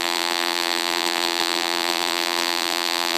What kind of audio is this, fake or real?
fake